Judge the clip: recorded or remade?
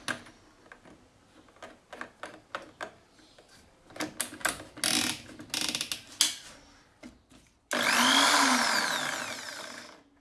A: recorded